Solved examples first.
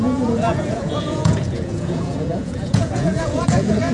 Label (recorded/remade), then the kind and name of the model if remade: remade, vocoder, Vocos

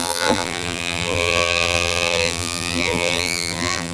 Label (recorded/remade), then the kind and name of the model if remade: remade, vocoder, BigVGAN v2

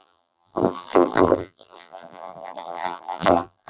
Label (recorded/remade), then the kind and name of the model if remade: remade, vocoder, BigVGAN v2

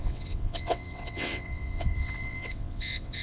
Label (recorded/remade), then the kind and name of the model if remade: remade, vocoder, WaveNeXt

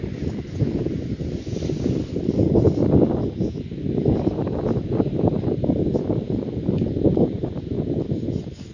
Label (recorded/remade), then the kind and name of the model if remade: recorded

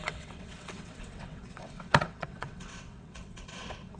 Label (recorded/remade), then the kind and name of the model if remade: remade, vocoder, WaveNeXt